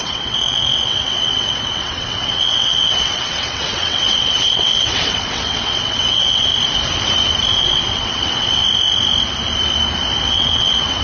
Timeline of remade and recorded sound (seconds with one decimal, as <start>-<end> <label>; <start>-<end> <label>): 0.0-6.5 remade; 6.5-7.5 recorded; 7.5-8.6 remade; 8.6-10.2 recorded; 10.2-11.0 remade